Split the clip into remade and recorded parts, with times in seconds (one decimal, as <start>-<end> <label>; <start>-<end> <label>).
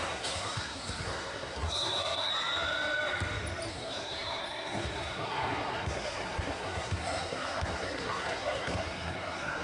0.0-2.3 remade; 2.3-3.7 recorded; 3.7-9.6 remade